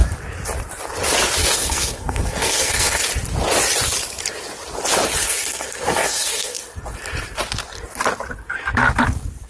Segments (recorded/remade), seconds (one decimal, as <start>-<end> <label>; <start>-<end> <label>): 0.0-1.4 recorded; 1.4-3.0 remade; 3.0-5.2 recorded; 5.2-6.6 remade; 6.6-9.5 recorded